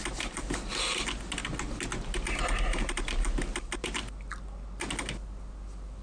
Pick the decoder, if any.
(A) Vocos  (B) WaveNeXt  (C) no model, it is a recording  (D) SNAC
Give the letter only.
C